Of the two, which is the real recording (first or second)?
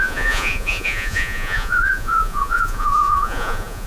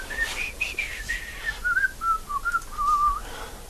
second